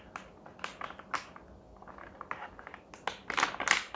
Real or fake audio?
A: real